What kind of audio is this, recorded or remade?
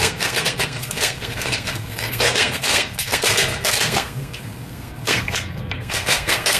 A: remade